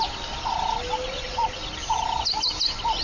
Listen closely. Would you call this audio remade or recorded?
recorded